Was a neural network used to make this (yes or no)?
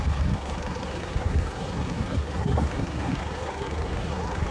yes